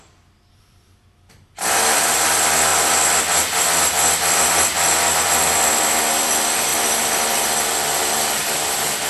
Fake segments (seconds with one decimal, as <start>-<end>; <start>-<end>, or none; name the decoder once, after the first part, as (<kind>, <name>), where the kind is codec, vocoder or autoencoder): 0.0-2.7 (vocoder, BigVGAN v2); 3.2-6.7; 7.7-9.1

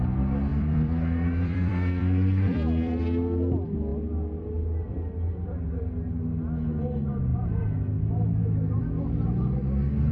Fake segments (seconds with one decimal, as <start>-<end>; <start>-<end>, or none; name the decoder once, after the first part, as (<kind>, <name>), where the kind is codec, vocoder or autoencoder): 0.5-3.0 (vocoder, BigVGAN v2)